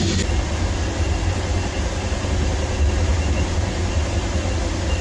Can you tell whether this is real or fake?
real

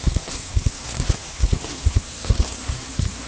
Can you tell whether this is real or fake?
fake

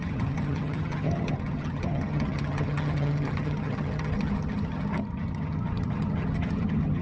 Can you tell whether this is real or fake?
fake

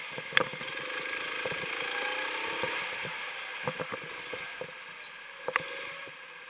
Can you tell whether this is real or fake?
real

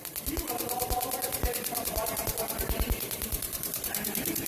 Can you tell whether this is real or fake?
fake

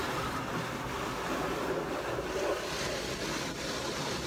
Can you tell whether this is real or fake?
real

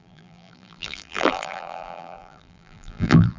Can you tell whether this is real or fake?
fake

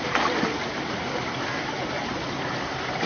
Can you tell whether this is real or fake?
real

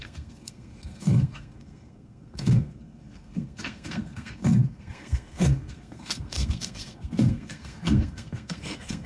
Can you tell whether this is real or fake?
fake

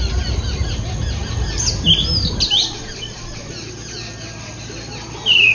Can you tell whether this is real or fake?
real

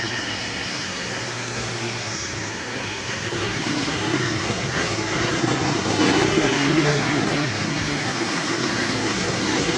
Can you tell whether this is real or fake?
fake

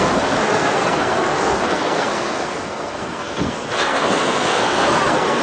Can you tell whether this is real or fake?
fake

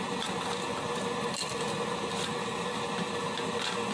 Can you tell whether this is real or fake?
real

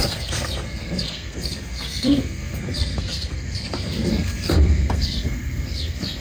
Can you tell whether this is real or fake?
fake